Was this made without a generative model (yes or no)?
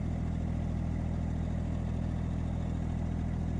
yes